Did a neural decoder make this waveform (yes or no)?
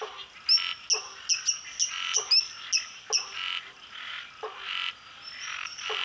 no